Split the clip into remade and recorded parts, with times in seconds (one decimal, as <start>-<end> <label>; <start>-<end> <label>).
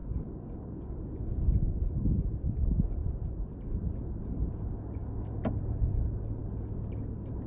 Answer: 0.0-7.5 recorded